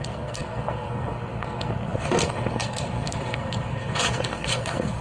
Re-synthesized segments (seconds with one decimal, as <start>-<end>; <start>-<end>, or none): 0.0-5.0